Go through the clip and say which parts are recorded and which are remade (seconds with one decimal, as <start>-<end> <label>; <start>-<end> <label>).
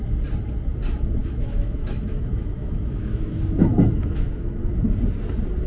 0.0-1.2 recorded; 1.2-4.6 remade; 4.6-5.7 recorded